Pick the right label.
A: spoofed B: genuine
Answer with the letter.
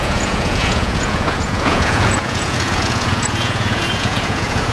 A